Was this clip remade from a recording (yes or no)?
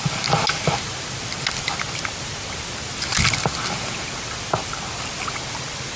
no